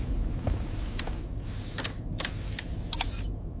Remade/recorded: recorded